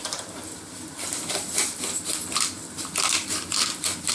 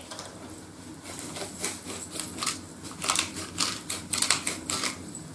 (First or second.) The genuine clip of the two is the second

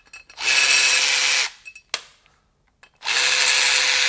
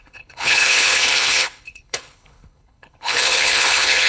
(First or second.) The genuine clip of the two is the first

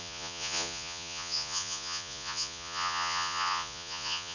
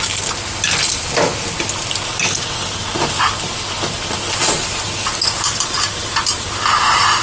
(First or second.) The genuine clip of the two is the second